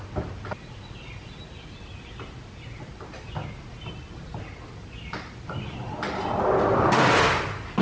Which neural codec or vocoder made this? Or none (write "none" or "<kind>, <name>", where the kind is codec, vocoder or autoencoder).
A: none